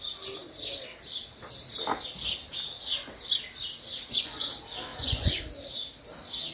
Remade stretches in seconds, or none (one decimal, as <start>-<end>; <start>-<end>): 3.9-4.5; 4.9-5.4